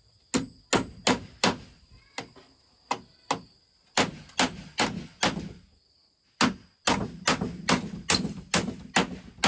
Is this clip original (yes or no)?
yes